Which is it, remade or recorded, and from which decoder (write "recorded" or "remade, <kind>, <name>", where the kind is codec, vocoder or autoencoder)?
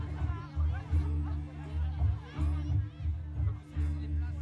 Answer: recorded